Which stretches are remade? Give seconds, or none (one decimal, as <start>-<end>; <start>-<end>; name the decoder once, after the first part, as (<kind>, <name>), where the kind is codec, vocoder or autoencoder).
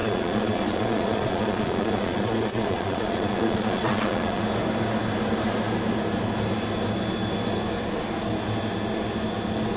0.0-4.4 (vocoder, Vocos)